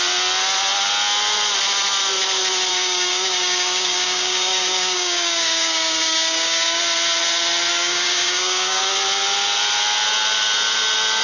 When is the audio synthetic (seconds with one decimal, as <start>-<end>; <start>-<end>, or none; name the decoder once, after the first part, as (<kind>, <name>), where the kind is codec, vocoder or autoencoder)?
2.7-6.8 (codec, DAC); 7.7-8.8